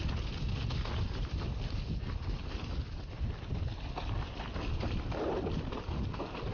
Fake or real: real